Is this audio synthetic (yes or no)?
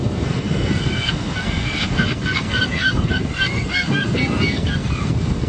yes